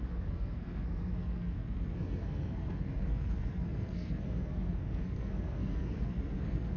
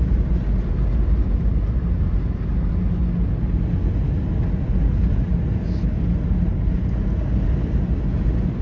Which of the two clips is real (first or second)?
second